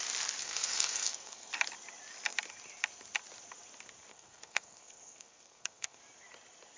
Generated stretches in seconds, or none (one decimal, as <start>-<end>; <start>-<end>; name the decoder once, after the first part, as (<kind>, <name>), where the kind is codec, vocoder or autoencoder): 0.4-1.5 (codec, SNAC); 4.1-6.0